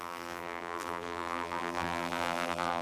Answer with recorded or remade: remade